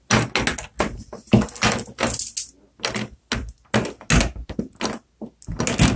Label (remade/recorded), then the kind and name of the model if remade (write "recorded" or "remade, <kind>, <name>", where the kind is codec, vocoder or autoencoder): recorded